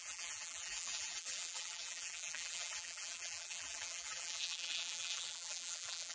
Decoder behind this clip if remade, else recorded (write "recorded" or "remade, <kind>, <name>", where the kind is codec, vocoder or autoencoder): remade, vocoder, BigVGAN v2